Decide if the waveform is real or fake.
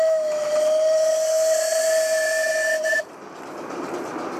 real